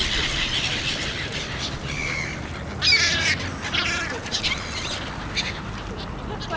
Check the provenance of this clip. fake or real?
real